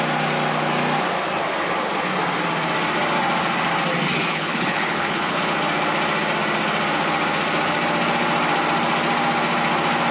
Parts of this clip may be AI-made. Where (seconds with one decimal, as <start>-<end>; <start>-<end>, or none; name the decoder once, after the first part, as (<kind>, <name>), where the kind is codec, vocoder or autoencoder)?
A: 4.3-5.4 (codec, HILCodec)